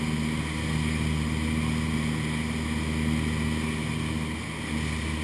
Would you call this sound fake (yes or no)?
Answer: no